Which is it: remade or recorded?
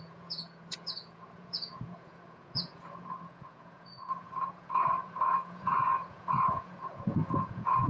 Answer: remade